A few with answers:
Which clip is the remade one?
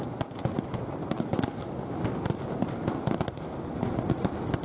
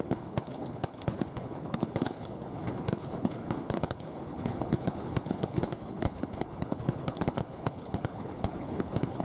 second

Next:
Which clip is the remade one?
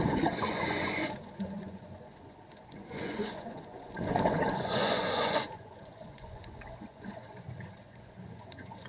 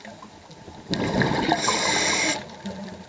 first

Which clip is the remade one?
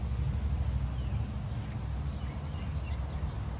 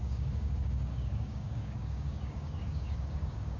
second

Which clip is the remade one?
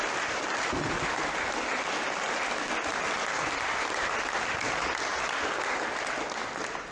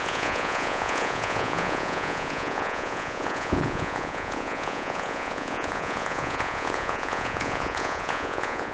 second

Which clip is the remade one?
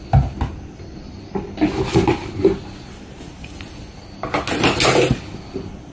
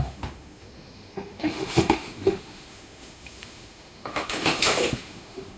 second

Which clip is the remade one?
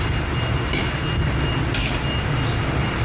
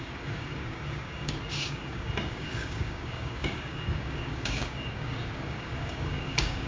second